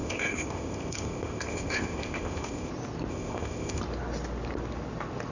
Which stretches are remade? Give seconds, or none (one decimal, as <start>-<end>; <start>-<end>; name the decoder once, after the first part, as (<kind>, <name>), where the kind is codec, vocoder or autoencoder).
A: 0.0-2.7 (codec, ZipCodec); 3.1-3.8